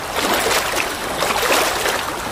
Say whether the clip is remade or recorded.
recorded